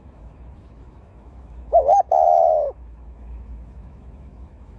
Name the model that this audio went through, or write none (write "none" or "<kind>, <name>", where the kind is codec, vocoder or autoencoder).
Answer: autoencoder, DAC-VAE